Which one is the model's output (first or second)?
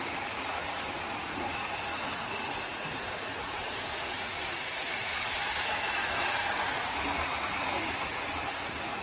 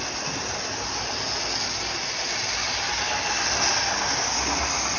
first